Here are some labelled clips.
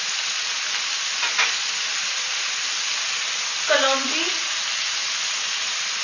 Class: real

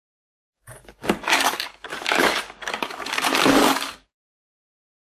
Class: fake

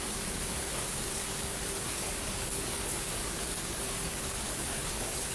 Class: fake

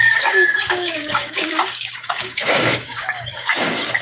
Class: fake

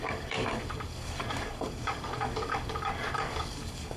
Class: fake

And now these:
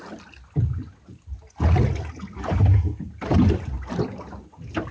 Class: real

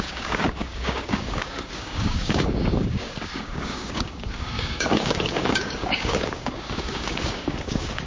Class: fake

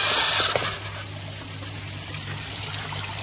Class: real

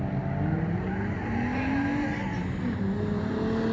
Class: real